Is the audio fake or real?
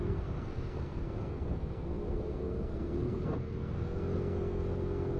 fake